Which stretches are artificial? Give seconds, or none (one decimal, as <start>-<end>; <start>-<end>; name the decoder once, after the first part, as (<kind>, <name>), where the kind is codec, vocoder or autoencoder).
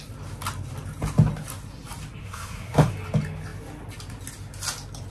2.2-2.9 (codec, SNAC)